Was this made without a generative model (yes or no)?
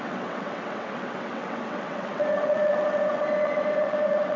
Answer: no